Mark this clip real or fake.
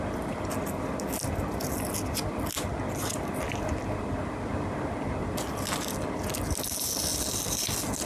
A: real